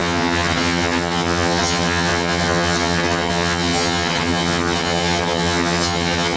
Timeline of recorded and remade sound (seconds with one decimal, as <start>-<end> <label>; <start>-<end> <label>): 0.0-6.4 remade